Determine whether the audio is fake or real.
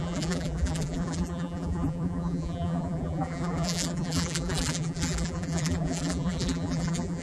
fake